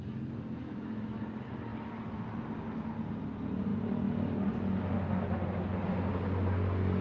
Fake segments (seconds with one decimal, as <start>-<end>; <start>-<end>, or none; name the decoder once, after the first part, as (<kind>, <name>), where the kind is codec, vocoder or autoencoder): 0.6-1.2 (autoencoder, DAC-VAE)